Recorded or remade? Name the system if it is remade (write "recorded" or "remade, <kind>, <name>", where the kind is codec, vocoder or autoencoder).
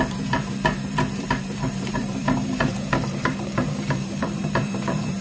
remade, vocoder, BigVGAN v2